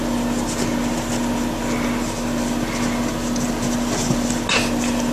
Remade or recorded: recorded